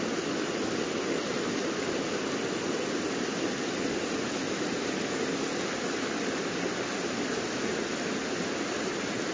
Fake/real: real